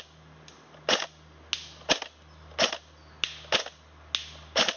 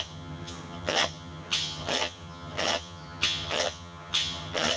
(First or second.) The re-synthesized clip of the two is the second